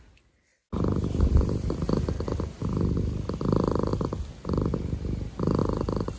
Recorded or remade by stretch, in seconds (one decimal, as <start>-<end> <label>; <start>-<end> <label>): 0.0-6.2 recorded